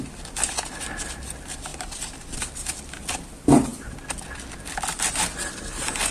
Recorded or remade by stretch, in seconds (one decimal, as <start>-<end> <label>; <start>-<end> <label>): 0.0-1.7 recorded; 1.7-2.4 remade; 2.4-6.1 recorded